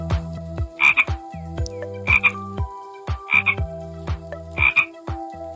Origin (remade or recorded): recorded